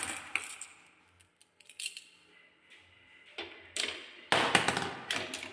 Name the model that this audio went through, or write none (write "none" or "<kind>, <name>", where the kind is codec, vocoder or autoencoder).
none